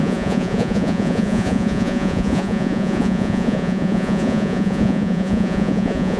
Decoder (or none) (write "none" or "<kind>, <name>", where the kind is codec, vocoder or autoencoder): vocoder, Vocos